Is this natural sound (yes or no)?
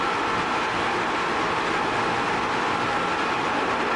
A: yes